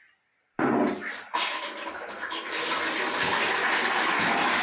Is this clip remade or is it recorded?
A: recorded